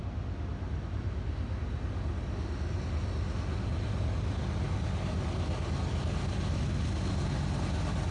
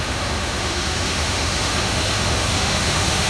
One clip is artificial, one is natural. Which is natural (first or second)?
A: first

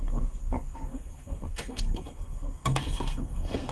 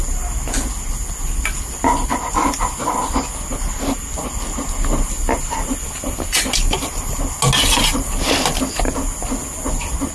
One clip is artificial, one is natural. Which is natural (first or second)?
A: second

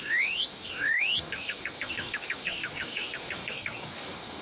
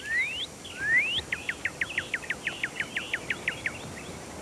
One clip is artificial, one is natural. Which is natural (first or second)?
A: second